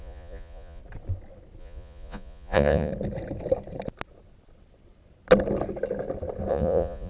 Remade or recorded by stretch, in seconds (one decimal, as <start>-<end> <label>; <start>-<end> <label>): 0.0-0.8 remade; 0.8-1.6 recorded; 1.6-2.9 remade; 2.9-6.5 recorded; 6.5-7.1 remade